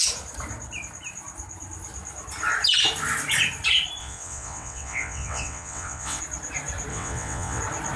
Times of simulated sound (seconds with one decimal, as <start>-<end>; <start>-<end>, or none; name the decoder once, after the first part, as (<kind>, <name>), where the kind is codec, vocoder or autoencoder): 4.0-6.2 (vocoder, WaveNeXt); 6.9-7.6